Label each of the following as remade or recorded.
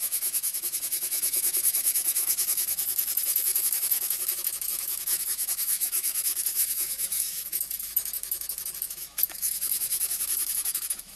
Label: remade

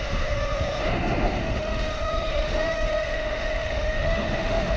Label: remade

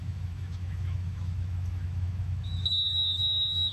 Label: remade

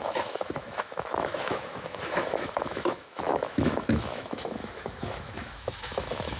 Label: remade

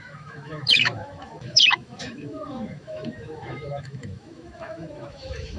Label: remade